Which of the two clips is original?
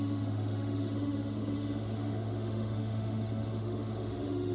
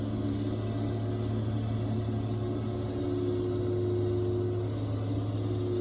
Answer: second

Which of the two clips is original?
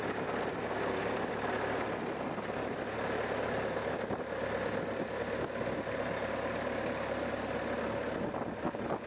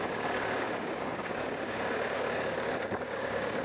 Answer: first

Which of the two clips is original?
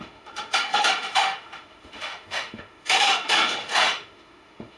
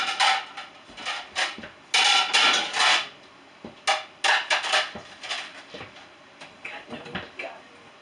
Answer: second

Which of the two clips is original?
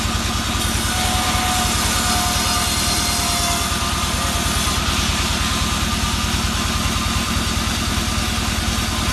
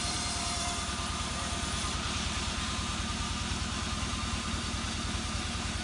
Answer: first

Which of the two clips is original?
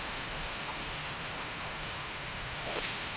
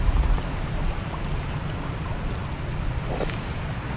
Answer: second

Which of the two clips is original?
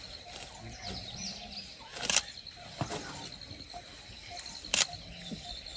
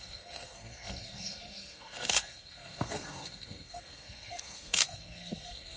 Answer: first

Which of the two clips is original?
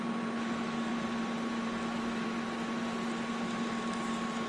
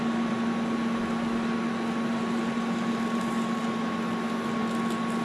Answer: second